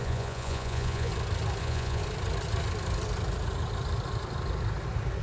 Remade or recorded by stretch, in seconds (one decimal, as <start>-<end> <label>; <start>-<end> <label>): 0.0-1.1 remade; 1.1-1.6 recorded; 1.6-2.0 remade; 2.0-5.2 recorded